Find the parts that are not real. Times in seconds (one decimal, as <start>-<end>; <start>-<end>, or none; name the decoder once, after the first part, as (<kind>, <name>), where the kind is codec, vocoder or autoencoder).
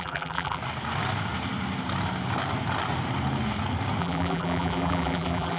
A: 0.0-0.6 (vocoder, BigVGAN v2); 4.0-5.6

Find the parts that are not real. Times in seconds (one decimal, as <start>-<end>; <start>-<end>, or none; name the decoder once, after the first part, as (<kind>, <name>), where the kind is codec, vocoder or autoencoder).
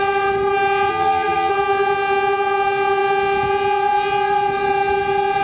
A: 0.9-1.5 (vocoder, HiFi-GAN)